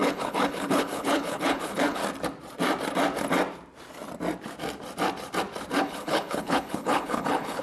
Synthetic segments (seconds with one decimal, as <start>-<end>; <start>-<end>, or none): 0.0-2.0; 5.8-7.6